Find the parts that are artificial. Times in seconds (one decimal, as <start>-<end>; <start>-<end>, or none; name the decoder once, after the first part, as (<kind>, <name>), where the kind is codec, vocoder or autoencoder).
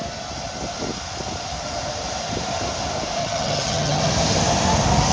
3.2-4.0 (vocoder, HiFi-GAN)